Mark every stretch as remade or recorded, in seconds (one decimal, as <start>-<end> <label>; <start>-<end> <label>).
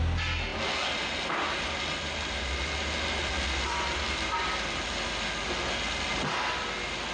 0.0-7.1 recorded